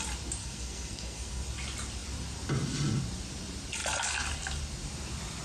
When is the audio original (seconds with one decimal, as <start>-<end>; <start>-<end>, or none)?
0.0-0.4; 1.5-5.4